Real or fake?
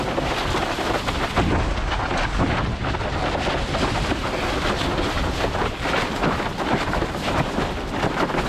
real